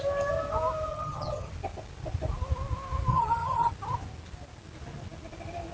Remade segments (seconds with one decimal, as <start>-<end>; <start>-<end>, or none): 0.9-1.5; 3.1-3.7